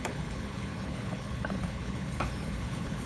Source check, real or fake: fake